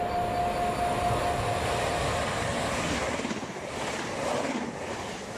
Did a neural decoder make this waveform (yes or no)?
no